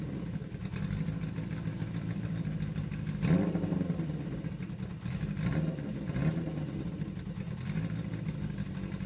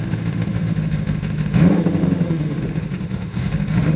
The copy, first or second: second